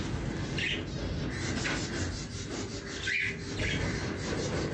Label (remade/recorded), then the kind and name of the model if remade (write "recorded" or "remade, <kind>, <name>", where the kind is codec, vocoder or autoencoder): recorded